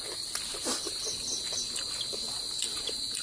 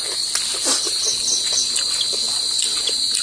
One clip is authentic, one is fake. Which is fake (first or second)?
first